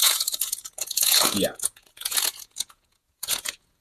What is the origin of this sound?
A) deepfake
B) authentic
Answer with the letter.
A